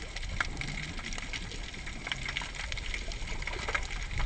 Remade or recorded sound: recorded